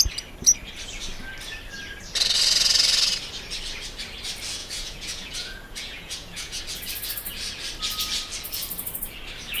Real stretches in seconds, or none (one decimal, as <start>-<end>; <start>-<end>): 0.0-4.6; 6.6-9.6